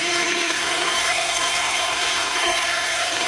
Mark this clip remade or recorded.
remade